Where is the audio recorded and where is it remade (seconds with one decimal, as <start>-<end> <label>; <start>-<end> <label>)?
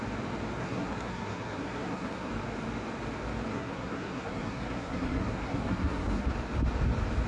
0.0-0.6 recorded; 0.6-2.3 remade; 2.3-3.5 recorded; 3.5-6.3 remade; 6.3-7.3 recorded